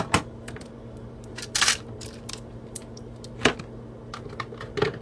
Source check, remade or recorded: recorded